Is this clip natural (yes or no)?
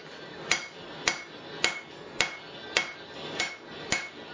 yes